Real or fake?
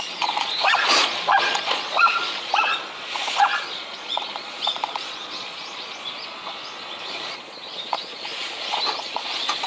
fake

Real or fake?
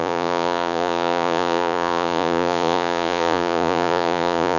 fake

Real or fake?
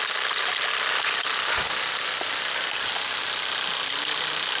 real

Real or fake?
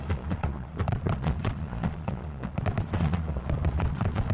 fake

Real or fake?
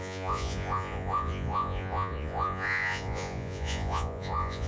fake